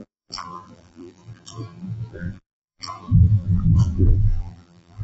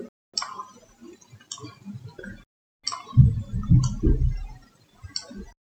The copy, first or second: first